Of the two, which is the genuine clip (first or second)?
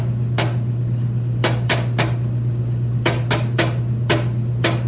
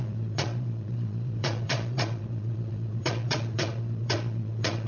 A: first